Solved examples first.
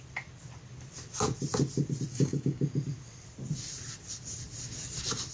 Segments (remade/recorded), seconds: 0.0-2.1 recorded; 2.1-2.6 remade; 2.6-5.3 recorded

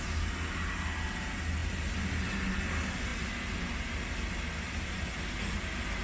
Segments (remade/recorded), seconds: 0.0-6.0 recorded

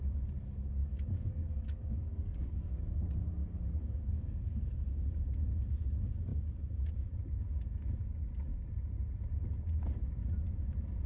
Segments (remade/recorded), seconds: 0.0-0.8 recorded; 0.8-2.8 remade; 2.8-3.4 recorded; 3.4-4.9 remade; 4.9-11.1 recorded

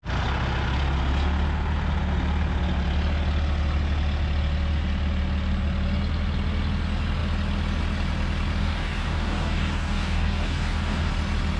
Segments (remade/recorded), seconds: 0.0-8.6 recorded; 8.6-11.1 remade; 11.1-11.6 recorded

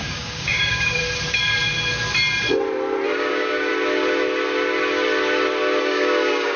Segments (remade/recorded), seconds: 0.0-1.0 remade; 1.0-3.3 recorded; 3.3-3.7 remade; 3.7-5.8 recorded; 5.8-6.6 remade